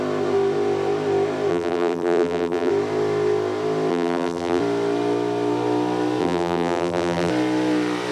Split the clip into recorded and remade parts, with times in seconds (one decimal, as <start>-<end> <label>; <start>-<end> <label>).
0.0-1.5 recorded; 1.5-2.7 remade; 2.7-3.9 recorded; 3.9-4.6 remade; 4.6-6.2 recorded; 6.2-7.3 remade; 7.3-8.1 recorded